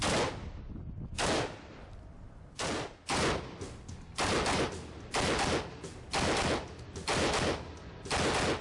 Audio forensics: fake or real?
real